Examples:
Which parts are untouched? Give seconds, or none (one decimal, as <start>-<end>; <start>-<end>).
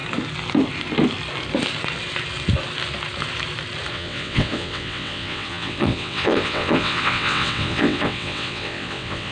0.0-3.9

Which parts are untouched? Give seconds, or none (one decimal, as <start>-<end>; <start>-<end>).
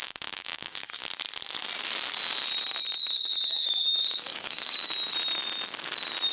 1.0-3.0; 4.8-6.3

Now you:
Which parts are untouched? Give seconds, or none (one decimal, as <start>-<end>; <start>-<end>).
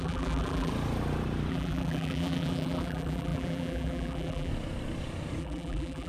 0.7-1.5; 4.5-5.4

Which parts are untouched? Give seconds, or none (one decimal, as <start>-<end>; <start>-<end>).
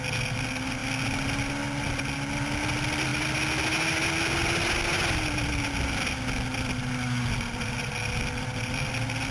0.0-9.3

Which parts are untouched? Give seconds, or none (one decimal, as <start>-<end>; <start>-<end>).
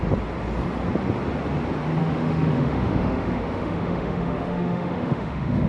0.0-2.0